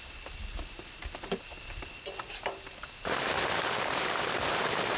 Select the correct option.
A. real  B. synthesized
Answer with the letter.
A